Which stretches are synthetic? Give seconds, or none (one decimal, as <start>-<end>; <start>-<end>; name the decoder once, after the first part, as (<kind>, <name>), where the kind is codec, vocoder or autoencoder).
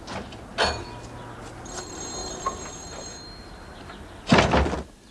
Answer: 2.2-4.2 (vocoder, BigVGAN v2)